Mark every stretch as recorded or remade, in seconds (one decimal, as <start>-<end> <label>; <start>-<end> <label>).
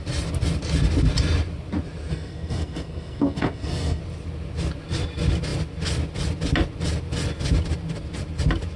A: 0.0-2.1 recorded; 2.1-4.0 remade; 4.0-8.8 recorded